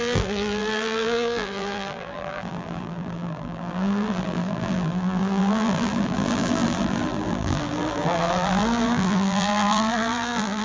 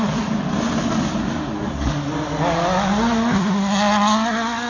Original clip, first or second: second